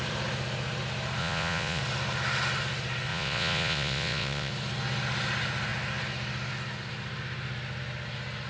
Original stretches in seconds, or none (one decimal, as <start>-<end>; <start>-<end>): 0.0-1.2; 1.8-3.1; 4.5-8.5

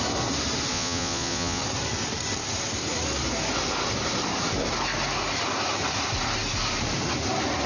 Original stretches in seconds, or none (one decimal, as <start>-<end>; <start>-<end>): 0.0-0.7; 1.6-7.7

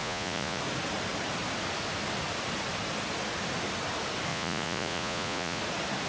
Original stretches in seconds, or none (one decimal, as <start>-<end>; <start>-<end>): 0.6-4.3; 5.6-6.1

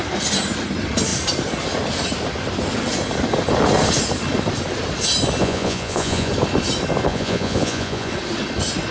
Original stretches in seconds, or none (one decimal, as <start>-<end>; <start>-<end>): 0.0-5.4; 6.3-7.1; 8.1-8.9

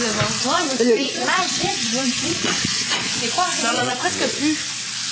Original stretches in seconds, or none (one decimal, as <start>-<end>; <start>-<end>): 0.0-0.4; 3.1-3.5; 4.1-5.1

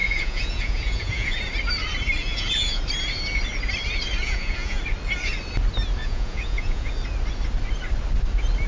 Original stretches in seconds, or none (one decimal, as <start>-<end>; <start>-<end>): 1.4-2.2; 2.8-4.2; 4.8-6.0; 6.9-8.7

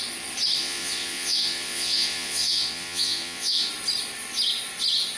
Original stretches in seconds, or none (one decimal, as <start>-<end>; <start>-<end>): 0.0-0.6; 3.7-5.2